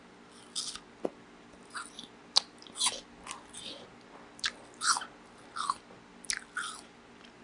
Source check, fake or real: real